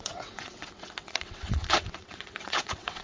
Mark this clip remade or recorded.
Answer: remade